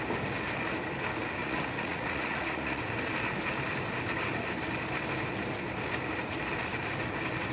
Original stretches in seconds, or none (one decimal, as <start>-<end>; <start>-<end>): 0.0-1.4; 2.8-7.5